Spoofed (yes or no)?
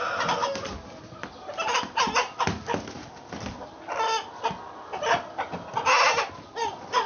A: no